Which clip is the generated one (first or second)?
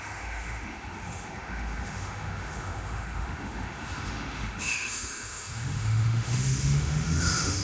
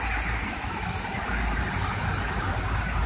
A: first